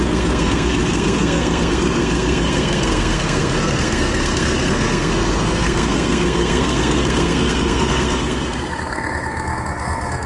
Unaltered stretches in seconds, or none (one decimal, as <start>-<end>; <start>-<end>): none

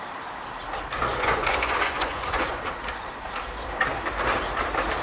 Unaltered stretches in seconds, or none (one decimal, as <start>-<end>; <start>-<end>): 0.0-1.1; 2.6-5.0

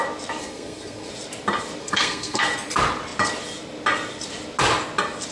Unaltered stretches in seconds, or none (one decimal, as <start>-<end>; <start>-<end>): 0.0-0.4; 1.1-1.8; 2.4-5.3

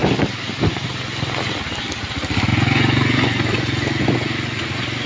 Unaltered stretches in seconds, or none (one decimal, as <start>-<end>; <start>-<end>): 0.0-2.5